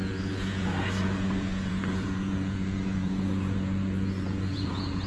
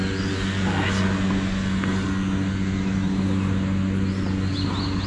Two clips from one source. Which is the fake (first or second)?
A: first